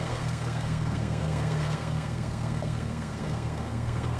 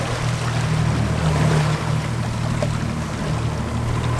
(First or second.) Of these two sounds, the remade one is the first